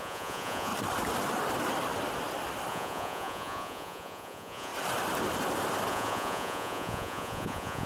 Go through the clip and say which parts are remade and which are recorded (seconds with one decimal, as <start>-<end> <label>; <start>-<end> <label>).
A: 0.0-0.7 remade; 0.7-2.7 recorded; 2.7-4.7 remade; 4.7-5.9 recorded; 5.9-7.9 remade